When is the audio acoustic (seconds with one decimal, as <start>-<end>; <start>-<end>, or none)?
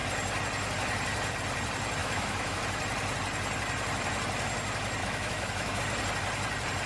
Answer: 0.0-2.0; 2.6-5.0; 5.8-6.9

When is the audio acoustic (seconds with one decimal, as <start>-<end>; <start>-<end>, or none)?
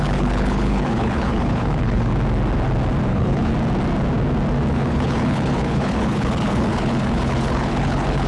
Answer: 2.1-3.1; 3.5-4.7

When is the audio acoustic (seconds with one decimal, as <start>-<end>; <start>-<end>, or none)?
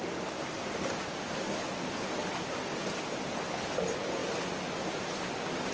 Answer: 0.0-5.7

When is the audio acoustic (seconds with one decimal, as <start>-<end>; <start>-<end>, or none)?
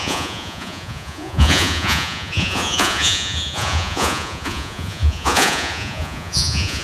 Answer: none